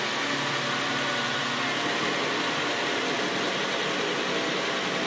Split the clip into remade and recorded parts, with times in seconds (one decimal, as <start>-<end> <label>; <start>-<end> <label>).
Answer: 0.0-5.1 recorded